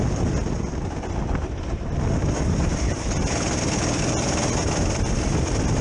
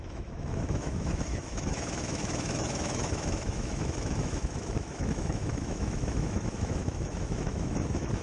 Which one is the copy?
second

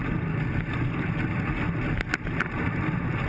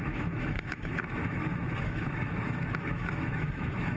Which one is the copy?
second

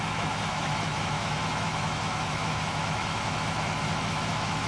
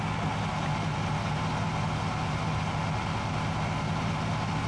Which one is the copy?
first